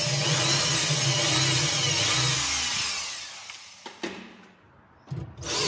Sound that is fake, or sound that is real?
real